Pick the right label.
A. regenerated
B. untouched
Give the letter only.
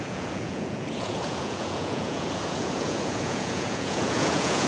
A